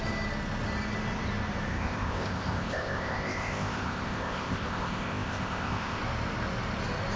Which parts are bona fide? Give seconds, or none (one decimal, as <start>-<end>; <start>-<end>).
0.0-1.7; 6.0-7.2